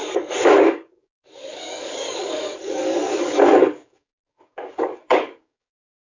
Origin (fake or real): fake